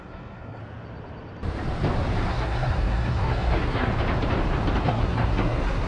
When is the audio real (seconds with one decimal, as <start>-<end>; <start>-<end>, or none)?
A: 0.6-2.3; 3.9-4.8

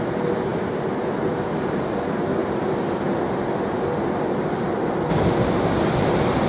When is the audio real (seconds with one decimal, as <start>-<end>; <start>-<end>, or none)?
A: 0.0-6.5

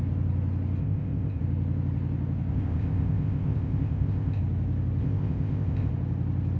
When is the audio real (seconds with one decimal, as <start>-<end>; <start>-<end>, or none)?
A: 0.0-0.8; 1.4-2.5; 4.4-5.0; 5.9-6.6

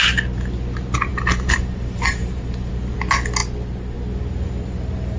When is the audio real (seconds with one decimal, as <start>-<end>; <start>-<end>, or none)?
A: 0.0-1.1; 2.7-5.2

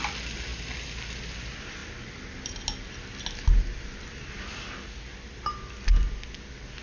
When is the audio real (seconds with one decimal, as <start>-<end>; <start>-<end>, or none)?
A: 0.0-6.8

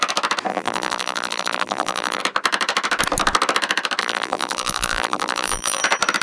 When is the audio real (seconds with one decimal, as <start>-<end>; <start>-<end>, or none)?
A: 0.0-0.5; 2.2-4.0; 5.8-6.2

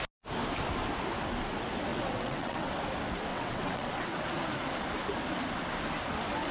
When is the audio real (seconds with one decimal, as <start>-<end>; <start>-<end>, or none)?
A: 0.0-1.9; 2.7-3.3; 4.2-6.5